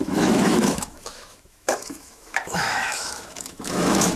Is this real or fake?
fake